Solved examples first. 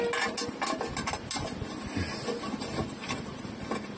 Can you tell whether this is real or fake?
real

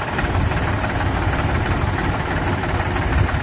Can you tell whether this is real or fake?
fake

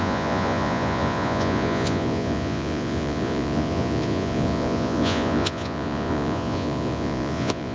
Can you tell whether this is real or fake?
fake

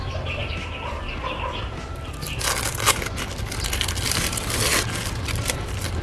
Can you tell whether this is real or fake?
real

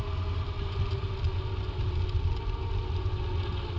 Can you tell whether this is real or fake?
real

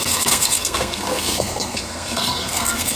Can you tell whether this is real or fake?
fake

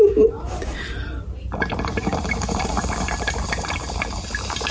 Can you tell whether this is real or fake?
fake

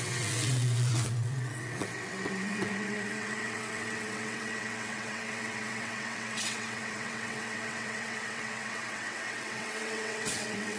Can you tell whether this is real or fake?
fake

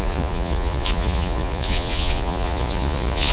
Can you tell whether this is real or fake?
fake